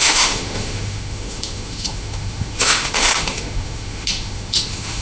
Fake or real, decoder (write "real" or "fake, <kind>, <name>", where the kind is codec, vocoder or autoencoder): fake, autoencoder, DAC-VAE